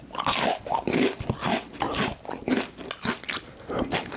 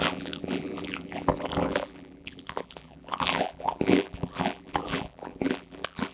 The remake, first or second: second